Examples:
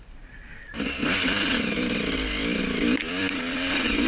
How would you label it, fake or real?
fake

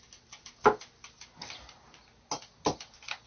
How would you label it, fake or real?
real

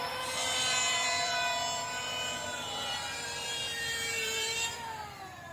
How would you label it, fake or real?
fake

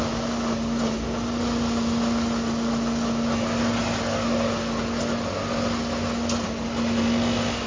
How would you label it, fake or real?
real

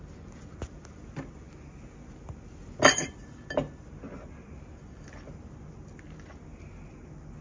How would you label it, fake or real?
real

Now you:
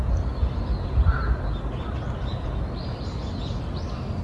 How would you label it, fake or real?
real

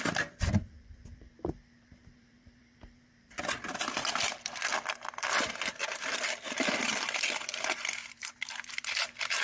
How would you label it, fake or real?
fake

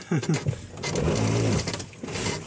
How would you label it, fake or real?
real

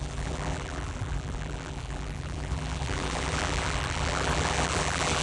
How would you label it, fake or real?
fake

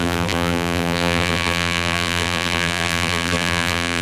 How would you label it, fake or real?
fake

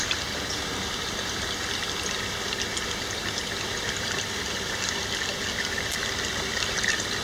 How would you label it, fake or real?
real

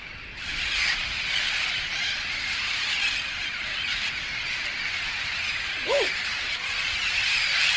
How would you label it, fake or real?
fake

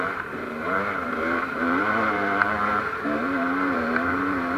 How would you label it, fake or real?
fake